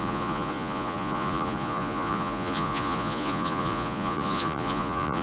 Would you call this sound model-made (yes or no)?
yes